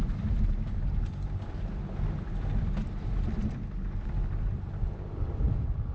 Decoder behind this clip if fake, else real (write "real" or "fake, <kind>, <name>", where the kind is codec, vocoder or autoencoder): fake, vocoder, BigVGAN v2